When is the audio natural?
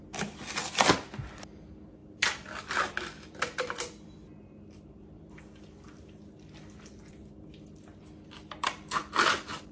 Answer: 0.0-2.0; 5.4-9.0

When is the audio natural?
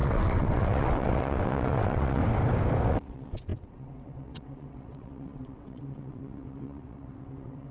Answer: 2.2-2.9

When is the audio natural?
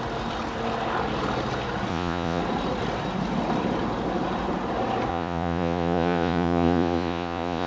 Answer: 0.0-1.9; 2.4-5.1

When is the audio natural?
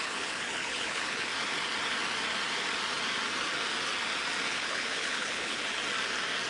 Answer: 1.3-4.5; 5.8-6.5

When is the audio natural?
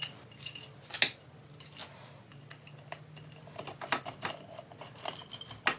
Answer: 0.0-5.8